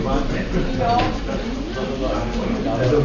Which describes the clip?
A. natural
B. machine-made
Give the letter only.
A